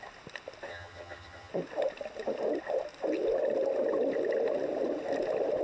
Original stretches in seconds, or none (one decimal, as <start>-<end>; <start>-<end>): 0.0-0.7; 1.5-5.6